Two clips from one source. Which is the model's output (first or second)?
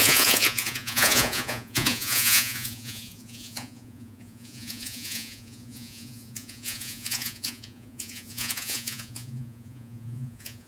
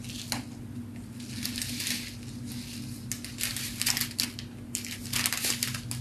first